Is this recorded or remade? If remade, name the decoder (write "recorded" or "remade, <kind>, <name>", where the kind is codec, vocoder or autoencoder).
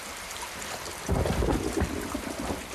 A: remade, vocoder, BigVGAN v2